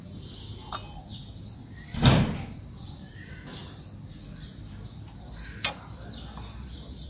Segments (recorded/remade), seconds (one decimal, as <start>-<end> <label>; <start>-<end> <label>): 0.0-7.1 recorded